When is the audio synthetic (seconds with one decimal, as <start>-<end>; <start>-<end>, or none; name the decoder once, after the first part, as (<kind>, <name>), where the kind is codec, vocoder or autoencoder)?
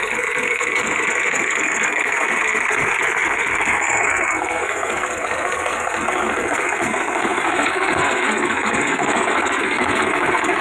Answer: 0.0-10.6 (codec, SNAC)